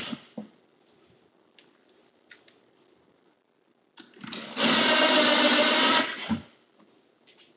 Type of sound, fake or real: real